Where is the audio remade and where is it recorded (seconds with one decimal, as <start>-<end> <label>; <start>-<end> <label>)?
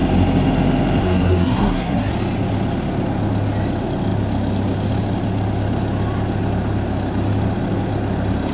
0.0-1.0 recorded; 1.0-2.1 remade; 2.1-8.5 recorded